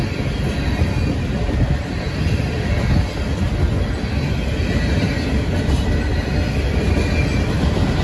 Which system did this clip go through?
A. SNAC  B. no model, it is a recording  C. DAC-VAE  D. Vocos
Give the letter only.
B